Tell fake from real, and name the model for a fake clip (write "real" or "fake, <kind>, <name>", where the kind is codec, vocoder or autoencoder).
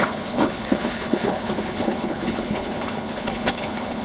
fake, codec, HILCodec